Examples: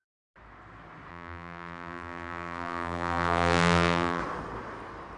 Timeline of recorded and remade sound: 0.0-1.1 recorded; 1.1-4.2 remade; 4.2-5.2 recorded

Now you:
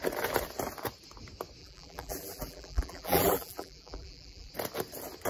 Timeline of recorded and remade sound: 0.0-1.6 recorded; 1.6-4.5 remade; 4.5-5.3 recorded

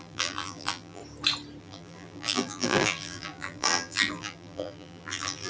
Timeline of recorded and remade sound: 0.0-1.0 remade; 1.0-1.6 recorded; 1.6-5.5 remade

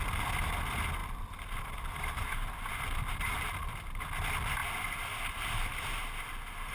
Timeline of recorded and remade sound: 0.0-1.0 recorded; 1.0-2.7 remade; 2.7-6.7 recorded

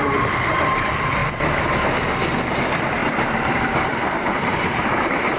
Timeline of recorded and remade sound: 0.0-1.2 remade; 1.2-2.5 recorded; 2.5-5.4 remade

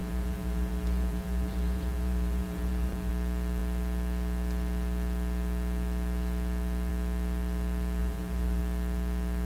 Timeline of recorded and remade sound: 0.0-3.1 remade; 3.1-8.0 recorded; 8.0-8.6 remade; 8.6-9.4 recorded

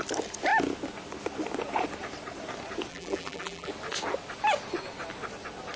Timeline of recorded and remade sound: 0.0-2.9 recorded; 2.9-3.7 remade; 3.7-5.8 recorded